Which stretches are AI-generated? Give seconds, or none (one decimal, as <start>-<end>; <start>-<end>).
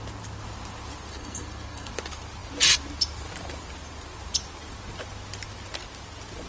1.1-1.9